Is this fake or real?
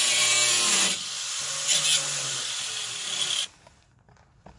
real